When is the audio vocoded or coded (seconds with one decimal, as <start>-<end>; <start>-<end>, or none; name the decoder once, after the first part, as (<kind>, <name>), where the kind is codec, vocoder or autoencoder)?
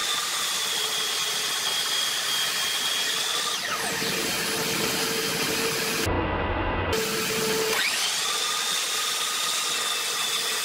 none